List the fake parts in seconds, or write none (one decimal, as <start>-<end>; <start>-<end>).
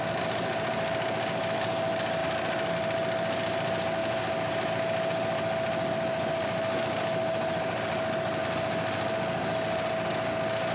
none